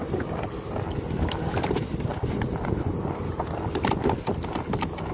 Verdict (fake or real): real